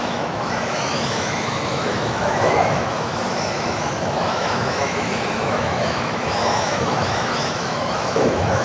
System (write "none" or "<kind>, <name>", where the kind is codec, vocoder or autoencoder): autoencoder, DAC-VAE